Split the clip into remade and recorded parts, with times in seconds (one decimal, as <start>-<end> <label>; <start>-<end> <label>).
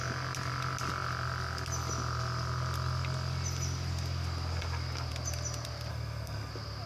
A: 0.0-5.9 recorded; 5.9-6.5 remade; 6.5-6.9 recorded